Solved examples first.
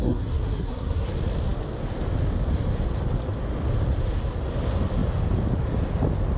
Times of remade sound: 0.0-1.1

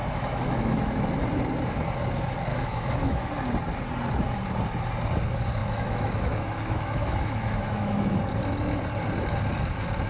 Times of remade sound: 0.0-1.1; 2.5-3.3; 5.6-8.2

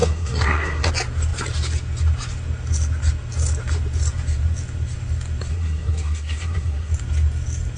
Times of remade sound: 0.0-0.9; 5.5-6.9

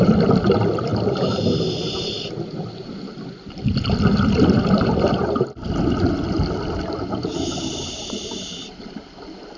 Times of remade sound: none